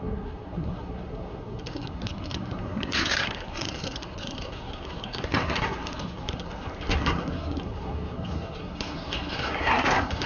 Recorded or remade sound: remade